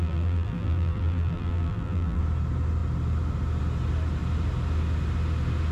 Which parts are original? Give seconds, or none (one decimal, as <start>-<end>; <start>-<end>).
2.2-5.7